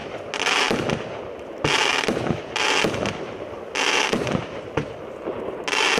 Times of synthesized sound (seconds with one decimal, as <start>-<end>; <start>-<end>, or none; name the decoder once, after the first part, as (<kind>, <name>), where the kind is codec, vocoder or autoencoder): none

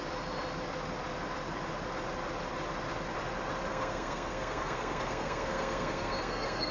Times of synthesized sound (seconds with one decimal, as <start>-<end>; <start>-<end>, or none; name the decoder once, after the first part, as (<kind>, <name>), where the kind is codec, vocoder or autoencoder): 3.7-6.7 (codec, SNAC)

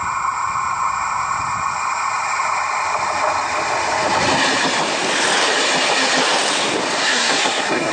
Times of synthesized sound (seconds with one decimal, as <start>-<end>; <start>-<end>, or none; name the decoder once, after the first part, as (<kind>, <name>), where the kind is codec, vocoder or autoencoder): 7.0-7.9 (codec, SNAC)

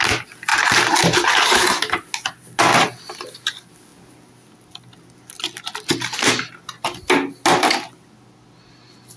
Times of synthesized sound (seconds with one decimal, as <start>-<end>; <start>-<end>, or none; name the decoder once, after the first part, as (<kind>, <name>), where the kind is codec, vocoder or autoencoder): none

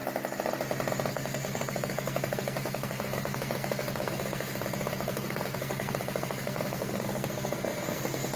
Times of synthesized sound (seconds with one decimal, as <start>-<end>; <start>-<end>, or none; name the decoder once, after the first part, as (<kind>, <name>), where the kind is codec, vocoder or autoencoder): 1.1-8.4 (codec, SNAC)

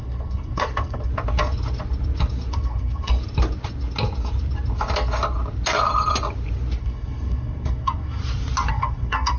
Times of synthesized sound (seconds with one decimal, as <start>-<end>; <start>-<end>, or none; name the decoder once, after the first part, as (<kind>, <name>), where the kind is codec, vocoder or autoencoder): 0.0-1.1 (codec, SNAC); 2.5-3.2; 6.8-8.2; 8.7-9.4

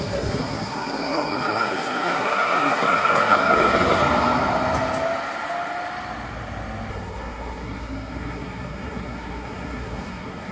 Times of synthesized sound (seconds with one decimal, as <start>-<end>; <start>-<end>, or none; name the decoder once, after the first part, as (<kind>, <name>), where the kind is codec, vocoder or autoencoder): 0.0-4.0 (codec, SNAC); 6.9-10.5

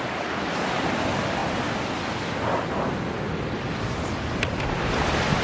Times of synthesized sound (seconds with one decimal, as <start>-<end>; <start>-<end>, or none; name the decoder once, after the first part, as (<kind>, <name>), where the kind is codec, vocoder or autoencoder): none